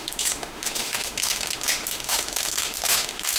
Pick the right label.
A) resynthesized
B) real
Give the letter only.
A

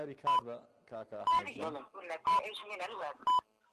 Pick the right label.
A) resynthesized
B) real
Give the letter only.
B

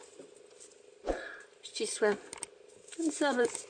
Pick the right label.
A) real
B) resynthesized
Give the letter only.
A